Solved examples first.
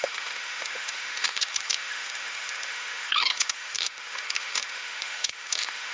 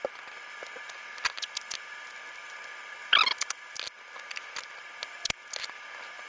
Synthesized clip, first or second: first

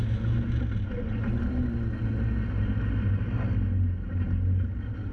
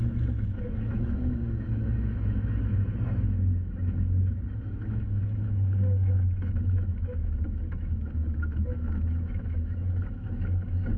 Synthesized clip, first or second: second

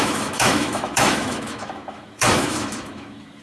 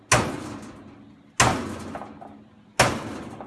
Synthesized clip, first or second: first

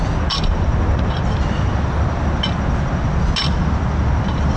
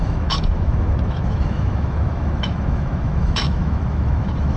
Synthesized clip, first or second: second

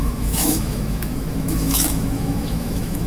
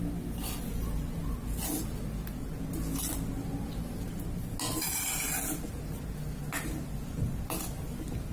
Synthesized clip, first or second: first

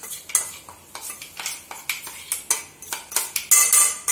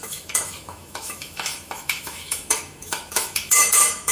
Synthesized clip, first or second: second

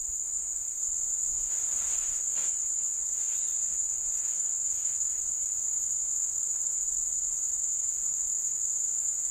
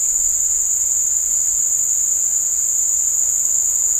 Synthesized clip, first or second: first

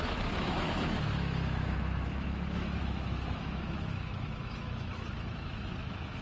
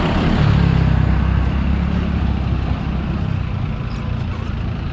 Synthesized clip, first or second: first